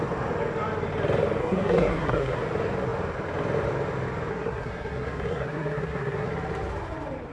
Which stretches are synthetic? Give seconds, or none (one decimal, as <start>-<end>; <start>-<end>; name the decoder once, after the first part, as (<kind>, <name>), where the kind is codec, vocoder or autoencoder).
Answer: 1.4-2.4 (codec, SNAC); 4.3-6.3